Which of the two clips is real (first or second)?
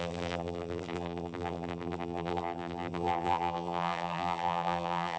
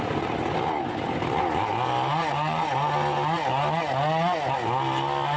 second